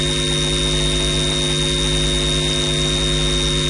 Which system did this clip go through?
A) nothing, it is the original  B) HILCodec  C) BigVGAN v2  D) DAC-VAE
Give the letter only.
A